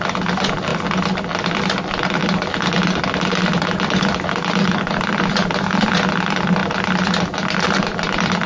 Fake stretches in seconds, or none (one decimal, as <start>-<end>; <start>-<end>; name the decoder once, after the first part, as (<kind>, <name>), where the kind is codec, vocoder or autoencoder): 0.0-0.7 (vocoder, BigVGAN v2); 1.6-2.2; 4.2-8.5